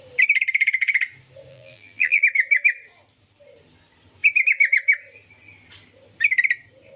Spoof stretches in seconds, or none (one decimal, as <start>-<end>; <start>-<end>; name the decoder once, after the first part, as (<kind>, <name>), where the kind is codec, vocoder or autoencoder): 1.5-2.2 (vocoder, BigVGAN v2)